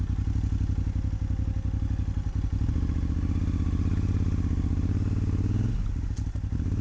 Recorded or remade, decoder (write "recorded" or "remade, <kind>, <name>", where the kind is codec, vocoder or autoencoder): recorded